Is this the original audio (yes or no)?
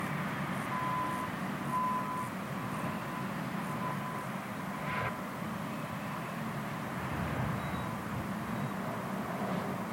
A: yes